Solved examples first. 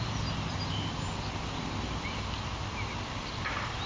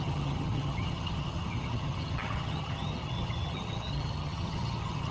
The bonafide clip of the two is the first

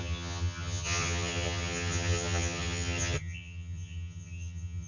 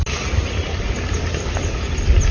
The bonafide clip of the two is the second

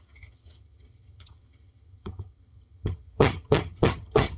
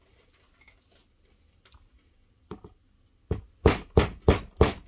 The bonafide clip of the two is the second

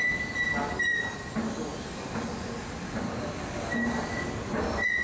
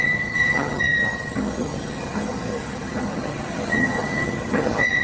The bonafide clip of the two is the first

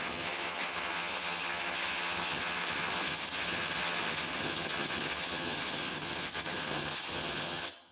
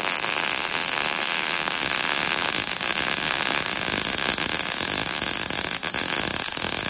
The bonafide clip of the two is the second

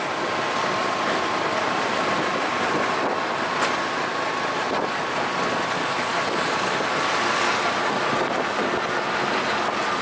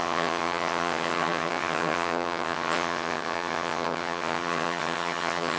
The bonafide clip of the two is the first